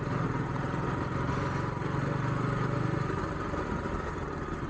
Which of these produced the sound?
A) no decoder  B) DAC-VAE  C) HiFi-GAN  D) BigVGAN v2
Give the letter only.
A